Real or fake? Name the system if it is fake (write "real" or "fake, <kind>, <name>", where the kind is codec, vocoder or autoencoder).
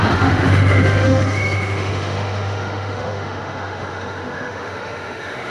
fake, autoencoder, DAC-VAE